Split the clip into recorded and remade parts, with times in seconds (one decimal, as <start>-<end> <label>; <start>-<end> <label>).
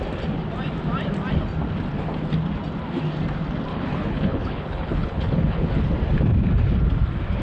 0.0-3.7 recorded; 3.7-5.9 remade; 5.9-7.4 recorded